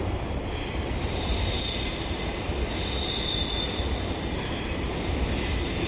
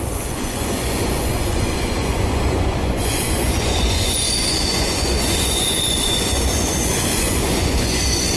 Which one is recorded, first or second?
first